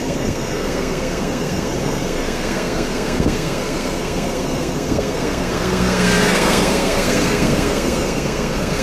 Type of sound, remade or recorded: remade